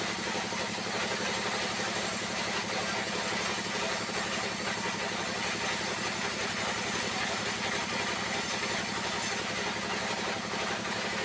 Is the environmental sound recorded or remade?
recorded